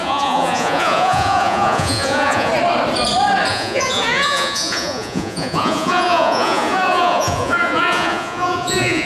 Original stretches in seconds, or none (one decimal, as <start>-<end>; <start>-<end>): 2.5-3.5

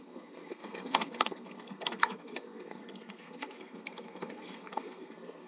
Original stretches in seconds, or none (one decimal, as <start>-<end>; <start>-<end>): none

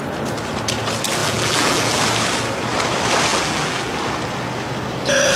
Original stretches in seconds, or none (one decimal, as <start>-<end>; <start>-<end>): 0.0-1.2; 2.0-3.3; 3.9-5.4

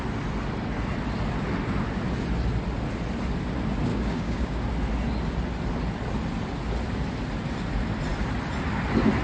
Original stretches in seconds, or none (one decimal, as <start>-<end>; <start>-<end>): 0.0-3.9; 4.6-9.2

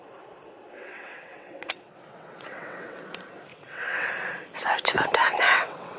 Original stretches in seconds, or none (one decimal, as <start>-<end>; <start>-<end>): 0.0-0.8; 3.0-3.5; 4.1-5.2

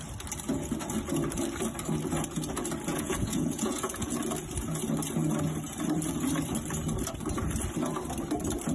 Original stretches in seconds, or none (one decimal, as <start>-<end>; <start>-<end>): 0.0-2.9; 4.2-8.7